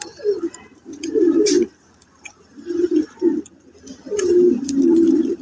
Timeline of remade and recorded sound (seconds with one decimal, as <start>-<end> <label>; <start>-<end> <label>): 0.0-3.3 remade; 3.3-3.9 recorded; 3.9-5.4 remade